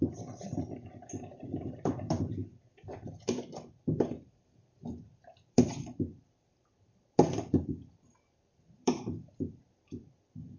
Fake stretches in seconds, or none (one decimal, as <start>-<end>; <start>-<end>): 0.0-10.6